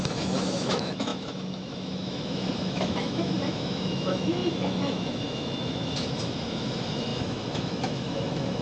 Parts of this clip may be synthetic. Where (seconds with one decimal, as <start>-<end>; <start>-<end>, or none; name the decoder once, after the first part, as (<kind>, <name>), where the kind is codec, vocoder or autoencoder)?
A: 0.0-8.6 (autoencoder, DAC-VAE)